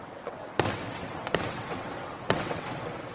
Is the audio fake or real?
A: fake